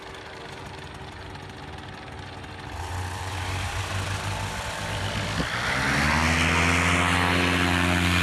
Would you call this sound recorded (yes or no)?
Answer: yes